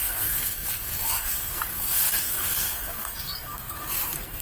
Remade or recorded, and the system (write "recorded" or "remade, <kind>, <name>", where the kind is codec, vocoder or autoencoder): remade, codec, SNAC